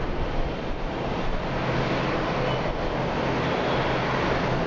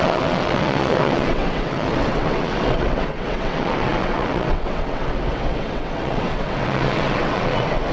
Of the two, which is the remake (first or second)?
second